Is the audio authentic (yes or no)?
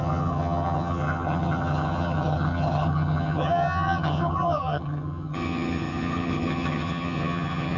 no